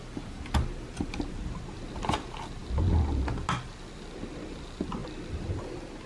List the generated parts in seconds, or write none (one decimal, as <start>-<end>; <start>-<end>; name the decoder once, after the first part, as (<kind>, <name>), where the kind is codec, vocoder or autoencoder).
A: none